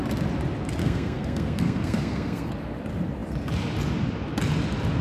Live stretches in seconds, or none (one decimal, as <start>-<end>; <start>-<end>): 0.0-0.8; 2.5-5.0